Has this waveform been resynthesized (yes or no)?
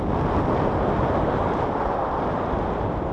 no